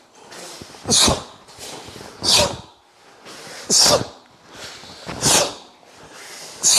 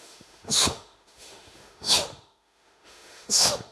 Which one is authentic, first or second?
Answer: first